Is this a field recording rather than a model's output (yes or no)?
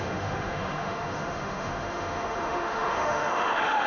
no